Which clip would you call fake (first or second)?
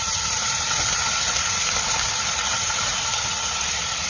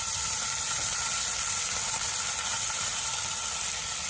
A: first